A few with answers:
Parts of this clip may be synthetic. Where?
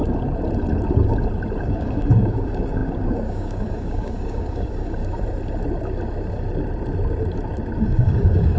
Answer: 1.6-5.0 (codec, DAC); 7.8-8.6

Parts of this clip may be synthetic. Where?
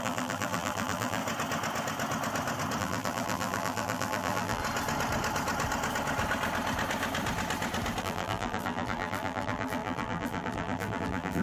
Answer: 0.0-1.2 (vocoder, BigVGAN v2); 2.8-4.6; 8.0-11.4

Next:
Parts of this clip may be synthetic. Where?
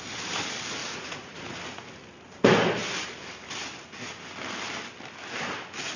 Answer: 0.8-1.5 (vocoder, Vocos)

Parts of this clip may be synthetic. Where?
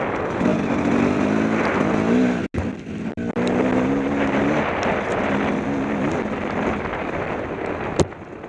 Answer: none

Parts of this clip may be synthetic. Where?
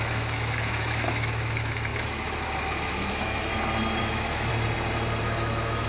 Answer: 0.0-3.5 (autoencoder, DAC-VAE); 4.0-4.5; 5.2-5.9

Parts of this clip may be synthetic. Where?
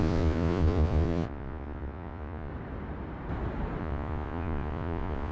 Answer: 0.0-2.5 (vocoder, Vocos); 3.8-5.3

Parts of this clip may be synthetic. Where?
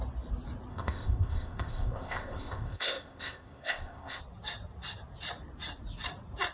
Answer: 0.7-4.2 (codec, ZipCodec)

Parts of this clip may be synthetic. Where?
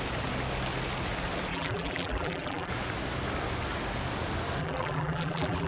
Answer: 1.5-2.7 (vocoder, BigVGAN v2); 4.6-5.7